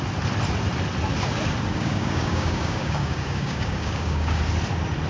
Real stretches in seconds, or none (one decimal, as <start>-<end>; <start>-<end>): 0.0-1.7; 4.4-5.1